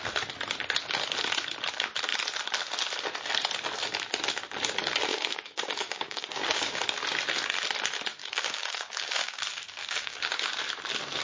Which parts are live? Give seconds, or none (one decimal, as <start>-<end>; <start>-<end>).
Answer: 0.0-5.1; 6.8-8.2; 9.4-9.8; 10.5-11.2